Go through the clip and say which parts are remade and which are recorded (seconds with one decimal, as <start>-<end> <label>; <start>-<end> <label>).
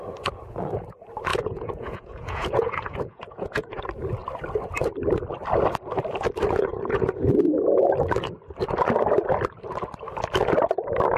0.0-1.3 recorded; 1.3-3.8 remade; 3.8-6.7 recorded; 6.7-7.2 remade; 7.2-11.2 recorded